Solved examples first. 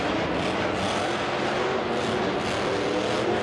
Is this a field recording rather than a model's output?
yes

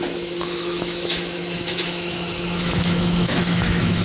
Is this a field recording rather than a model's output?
no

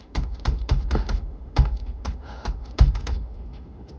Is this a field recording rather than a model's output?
no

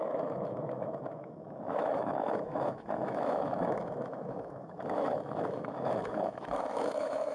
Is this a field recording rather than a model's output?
no